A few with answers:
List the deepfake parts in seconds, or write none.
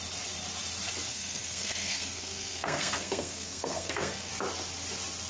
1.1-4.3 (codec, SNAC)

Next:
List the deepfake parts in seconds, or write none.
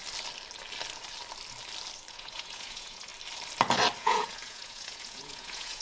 2.1-3.1 (vocoder, Vocos); 4.0-5.8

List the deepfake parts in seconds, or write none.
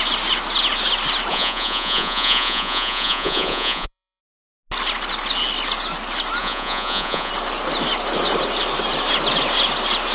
1.3-4.2 (vocoder, Vocos); 6.4-7.3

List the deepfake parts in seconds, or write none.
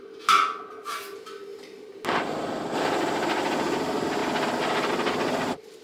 none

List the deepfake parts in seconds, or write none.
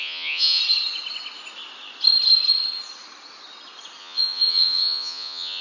0.0-0.6 (vocoder, Vocos); 4.0-5.6